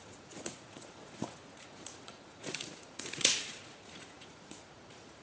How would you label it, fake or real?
fake